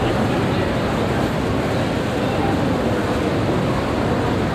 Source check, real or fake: real